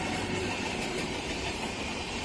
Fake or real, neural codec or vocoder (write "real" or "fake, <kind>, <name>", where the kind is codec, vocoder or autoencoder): fake, vocoder, BigVGAN v2